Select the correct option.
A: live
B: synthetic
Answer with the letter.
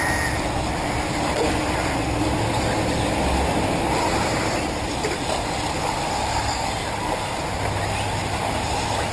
A